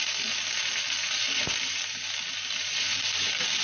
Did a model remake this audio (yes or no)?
no